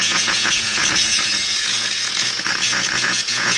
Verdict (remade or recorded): remade